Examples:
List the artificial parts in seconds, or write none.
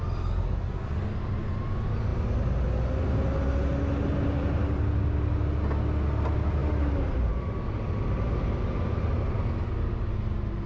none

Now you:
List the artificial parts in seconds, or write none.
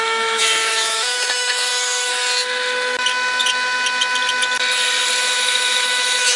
0.0-2.1 (autoencoder, DAC-VAE); 5.2-6.4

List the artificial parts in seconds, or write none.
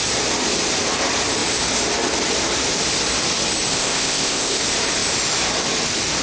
3.7-4.6 (codec, ZipCodec)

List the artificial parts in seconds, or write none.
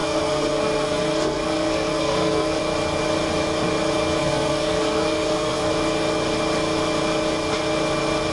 0.0-2.6 (codec, SNAC); 4.2-5.7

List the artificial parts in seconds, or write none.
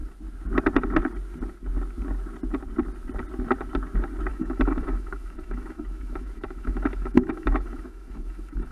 4.3-8.7 (autoencoder, DAC-VAE)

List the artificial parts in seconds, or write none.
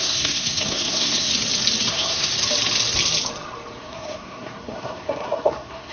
0.0-1.3 (codec, SNAC); 1.9-2.3; 3.8-5.9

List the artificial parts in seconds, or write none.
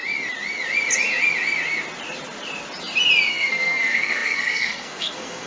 3.3-5.5 (codec, SNAC)